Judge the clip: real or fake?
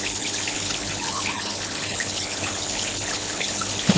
fake